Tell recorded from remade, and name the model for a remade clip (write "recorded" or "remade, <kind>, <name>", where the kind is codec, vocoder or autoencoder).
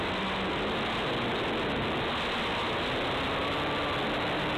recorded